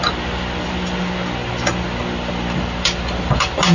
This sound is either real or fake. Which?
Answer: real